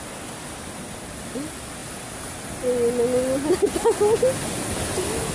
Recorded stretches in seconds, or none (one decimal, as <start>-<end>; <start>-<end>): 0.0-5.3